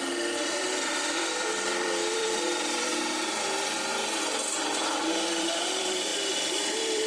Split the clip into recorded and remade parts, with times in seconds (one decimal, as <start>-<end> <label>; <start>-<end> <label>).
0.0-3.9 remade; 3.9-5.4 recorded; 5.4-6.1 remade; 6.1-6.6 recorded; 6.6-7.1 remade